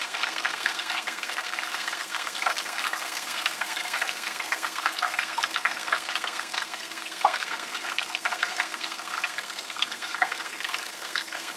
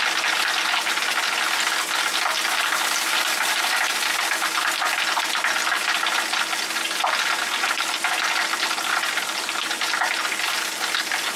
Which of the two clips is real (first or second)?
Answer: second